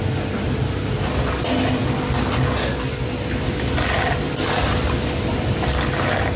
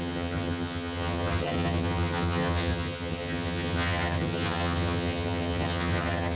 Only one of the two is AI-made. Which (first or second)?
second